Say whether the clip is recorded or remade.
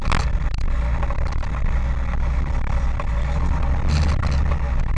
recorded